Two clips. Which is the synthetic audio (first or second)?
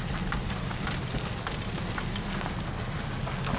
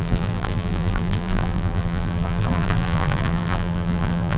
second